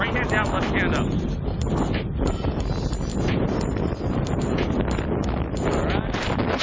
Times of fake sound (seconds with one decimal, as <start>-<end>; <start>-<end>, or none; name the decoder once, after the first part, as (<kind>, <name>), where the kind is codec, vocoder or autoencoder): none